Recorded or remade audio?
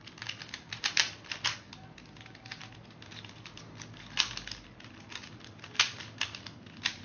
recorded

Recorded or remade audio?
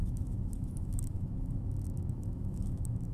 remade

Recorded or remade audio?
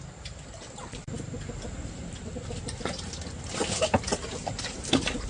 recorded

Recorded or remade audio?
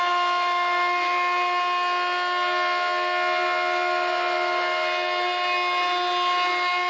recorded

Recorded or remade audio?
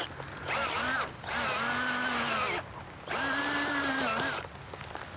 recorded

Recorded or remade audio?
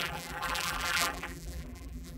remade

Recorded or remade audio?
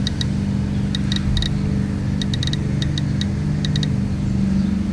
recorded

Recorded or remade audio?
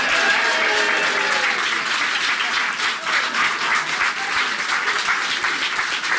recorded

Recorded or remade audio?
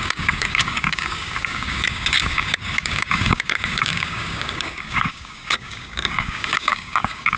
remade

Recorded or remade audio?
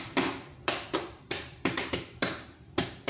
remade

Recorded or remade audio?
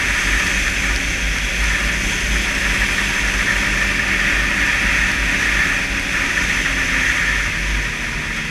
recorded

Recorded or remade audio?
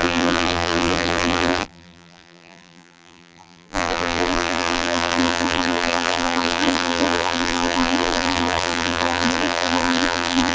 remade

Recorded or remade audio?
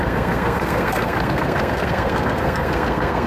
remade